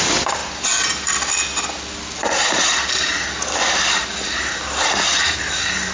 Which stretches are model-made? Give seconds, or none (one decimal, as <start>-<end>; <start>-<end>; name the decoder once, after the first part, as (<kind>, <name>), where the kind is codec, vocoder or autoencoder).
0.0-0.4 (vocoder, BigVGAN v2); 3.9-5.9